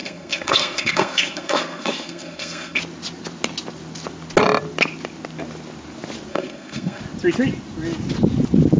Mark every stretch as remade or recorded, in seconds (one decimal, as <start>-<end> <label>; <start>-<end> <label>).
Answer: 0.0-2.8 remade; 2.8-6.3 recorded; 6.3-7.0 remade; 7.0-8.8 recorded